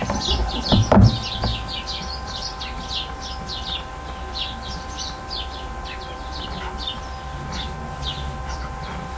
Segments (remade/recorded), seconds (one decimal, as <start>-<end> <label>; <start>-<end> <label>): 0.0-9.2 recorded